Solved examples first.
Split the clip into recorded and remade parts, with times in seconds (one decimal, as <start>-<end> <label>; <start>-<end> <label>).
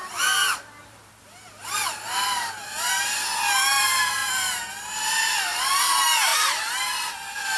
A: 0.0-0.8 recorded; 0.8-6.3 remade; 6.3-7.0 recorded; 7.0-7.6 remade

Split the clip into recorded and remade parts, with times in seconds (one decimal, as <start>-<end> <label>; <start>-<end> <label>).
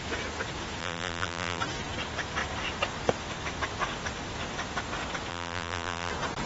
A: 0.0-0.8 recorded; 0.8-1.6 remade; 1.6-5.3 recorded; 5.3-6.1 remade; 6.1-6.5 recorded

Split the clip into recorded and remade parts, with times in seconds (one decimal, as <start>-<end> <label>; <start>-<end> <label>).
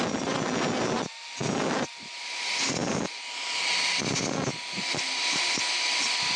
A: 0.0-6.4 recorded